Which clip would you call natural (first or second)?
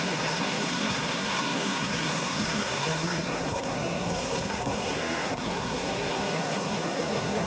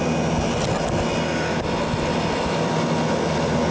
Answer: second